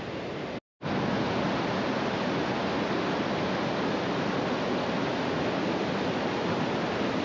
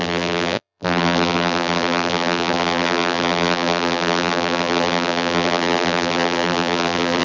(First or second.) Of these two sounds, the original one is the first